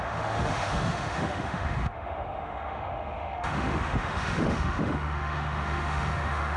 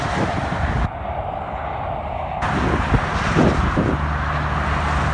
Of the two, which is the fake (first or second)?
first